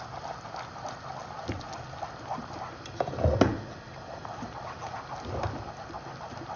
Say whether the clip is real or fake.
real